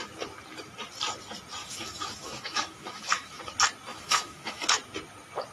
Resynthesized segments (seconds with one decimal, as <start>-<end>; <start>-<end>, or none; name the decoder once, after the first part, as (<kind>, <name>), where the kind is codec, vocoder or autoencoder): 1.6-3.4 (autoencoder, DAC-VAE); 3.9-4.7